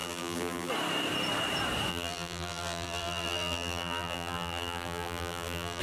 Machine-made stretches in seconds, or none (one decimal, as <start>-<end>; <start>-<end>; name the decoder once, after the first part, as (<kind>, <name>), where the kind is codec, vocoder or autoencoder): 0.0-0.7 (vocoder, BigVGAN v2); 1.9-5.8